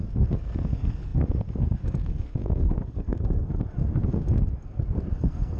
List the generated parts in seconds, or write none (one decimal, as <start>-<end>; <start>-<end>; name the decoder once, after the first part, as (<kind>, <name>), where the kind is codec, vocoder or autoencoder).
0.0-5.6 (codec, SNAC)